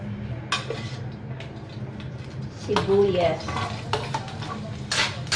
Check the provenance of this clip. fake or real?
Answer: real